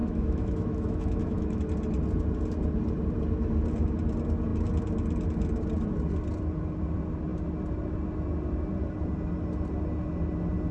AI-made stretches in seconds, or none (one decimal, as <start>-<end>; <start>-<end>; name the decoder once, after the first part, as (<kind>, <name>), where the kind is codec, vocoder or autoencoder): 0.0-1.6 (autoencoder, DAC-VAE)